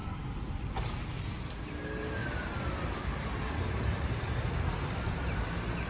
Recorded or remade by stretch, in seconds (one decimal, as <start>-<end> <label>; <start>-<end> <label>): 0.0-2.2 recorded; 2.2-5.5 remade; 5.5-5.9 recorded